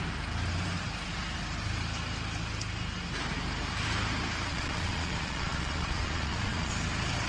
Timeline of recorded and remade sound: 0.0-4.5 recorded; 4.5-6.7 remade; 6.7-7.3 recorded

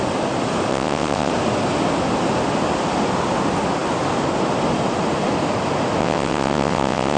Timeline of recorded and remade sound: 0.0-0.7 recorded; 0.7-1.3 remade; 1.3-6.0 recorded; 6.0-7.2 remade

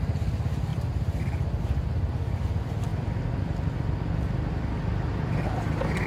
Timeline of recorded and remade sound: 0.0-6.1 recorded

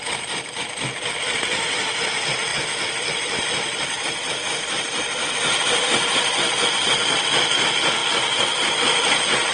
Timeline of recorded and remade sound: 0.0-8.0 recorded; 8.0-8.7 remade; 8.7-9.5 recorded

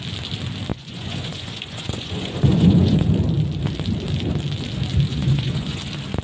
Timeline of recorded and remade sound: 0.0-0.7 recorded; 0.7-3.1 remade; 3.1-5.1 recorded; 5.1-5.8 remade; 5.8-6.2 recorded

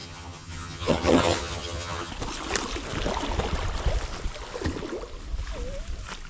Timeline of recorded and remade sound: 0.0-2.1 remade; 2.1-6.3 recorded

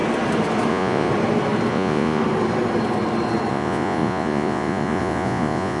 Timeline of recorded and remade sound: 0.0-0.7 recorded; 0.7-1.1 remade; 1.1-1.7 recorded; 1.7-2.2 remade; 2.2-3.5 recorded; 3.5-5.8 remade